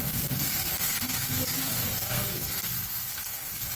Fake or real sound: fake